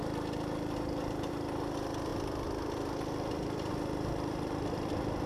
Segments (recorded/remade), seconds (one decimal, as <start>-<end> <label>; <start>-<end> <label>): 0.0-5.3 recorded